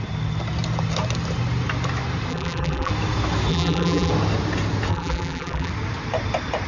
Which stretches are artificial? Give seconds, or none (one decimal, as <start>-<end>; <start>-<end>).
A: 2.3-2.9; 3.5-4.1; 4.9-5.7